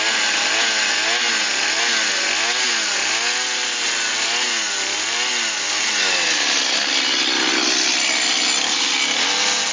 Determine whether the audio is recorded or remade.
recorded